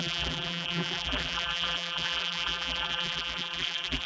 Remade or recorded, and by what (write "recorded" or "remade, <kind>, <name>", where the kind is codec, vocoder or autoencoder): remade, vocoder, BigVGAN v2